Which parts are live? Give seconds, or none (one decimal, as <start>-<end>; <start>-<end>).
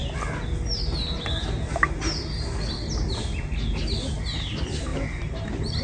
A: 0.0-4.9